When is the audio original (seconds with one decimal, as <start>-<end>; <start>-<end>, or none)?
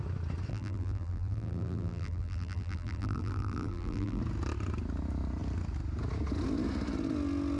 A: 0.0-0.5; 4.2-7.6